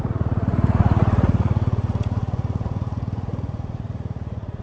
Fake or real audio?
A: fake